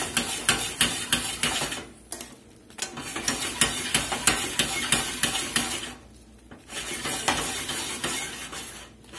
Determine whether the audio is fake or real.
real